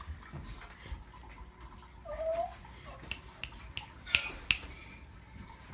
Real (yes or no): yes